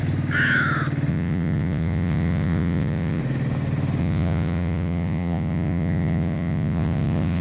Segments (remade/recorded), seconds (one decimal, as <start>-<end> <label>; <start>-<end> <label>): 0.0-1.1 recorded; 1.1-3.2 remade; 3.2-4.0 recorded; 4.0-7.4 remade